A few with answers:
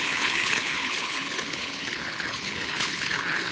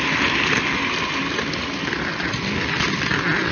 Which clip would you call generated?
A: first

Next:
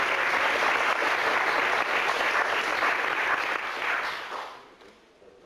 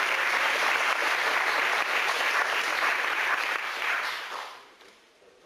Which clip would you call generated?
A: second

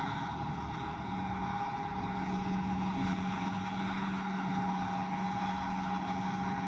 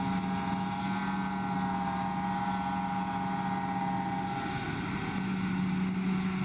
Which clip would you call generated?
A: first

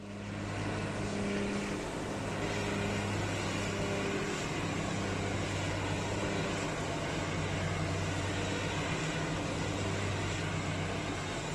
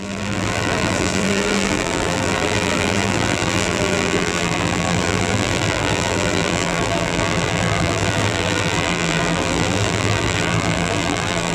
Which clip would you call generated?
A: second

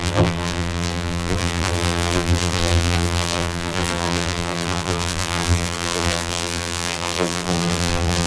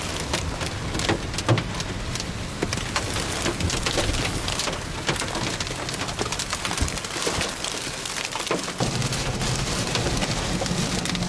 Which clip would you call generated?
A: first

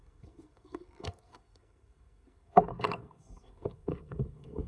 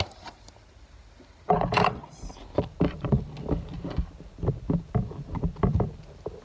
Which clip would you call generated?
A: first